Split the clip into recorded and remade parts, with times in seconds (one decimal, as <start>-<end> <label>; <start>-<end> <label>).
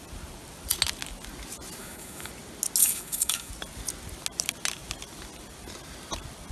0.0-1.8 recorded; 1.8-2.3 remade; 2.3-2.8 recorded; 2.8-3.5 remade; 3.5-6.5 recorded